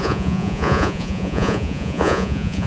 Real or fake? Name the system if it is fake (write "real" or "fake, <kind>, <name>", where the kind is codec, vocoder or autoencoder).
fake, vocoder, Vocos